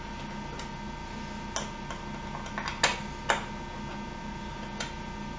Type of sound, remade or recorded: recorded